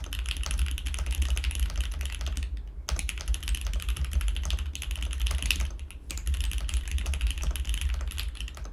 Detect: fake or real real